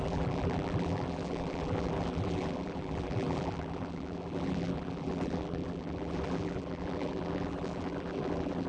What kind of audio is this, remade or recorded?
remade